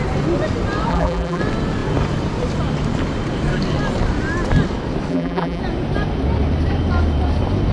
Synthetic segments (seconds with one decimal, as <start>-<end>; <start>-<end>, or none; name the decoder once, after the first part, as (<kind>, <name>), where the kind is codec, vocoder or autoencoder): 0.9-1.4 (vocoder, BigVGAN v2); 5.1-5.6